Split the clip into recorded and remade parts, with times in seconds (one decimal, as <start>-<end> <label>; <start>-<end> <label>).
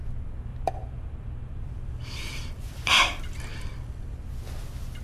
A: 0.0-0.5 recorded; 0.5-3.1 remade; 3.1-5.0 recorded